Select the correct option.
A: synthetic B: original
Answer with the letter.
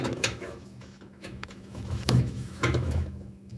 A